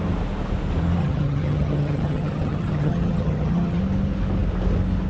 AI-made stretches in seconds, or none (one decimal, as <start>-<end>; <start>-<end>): 1.0-3.8